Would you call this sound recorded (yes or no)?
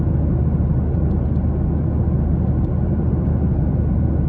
yes